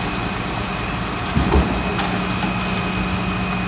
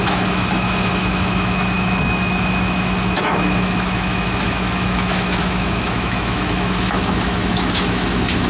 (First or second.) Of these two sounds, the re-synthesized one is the second